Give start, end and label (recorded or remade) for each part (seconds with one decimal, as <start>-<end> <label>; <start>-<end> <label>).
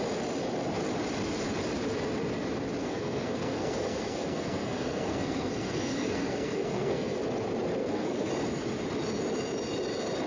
0.0-2.8 recorded; 2.8-7.2 remade; 7.2-7.8 recorded; 7.8-8.3 remade; 8.3-10.3 recorded